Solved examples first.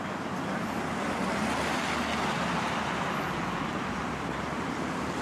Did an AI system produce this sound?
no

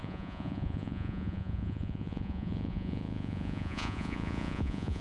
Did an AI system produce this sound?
yes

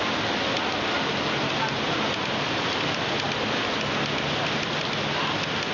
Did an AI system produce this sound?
no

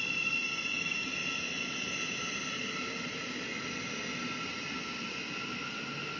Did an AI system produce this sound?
no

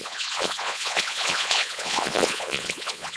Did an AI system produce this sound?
yes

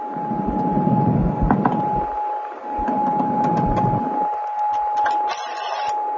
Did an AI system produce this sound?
no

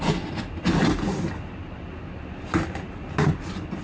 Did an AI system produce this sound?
no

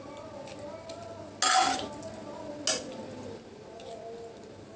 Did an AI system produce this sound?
no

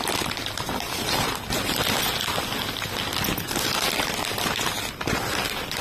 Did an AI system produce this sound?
no